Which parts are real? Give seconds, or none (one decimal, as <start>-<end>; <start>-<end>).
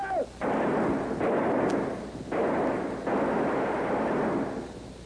0.0-5.1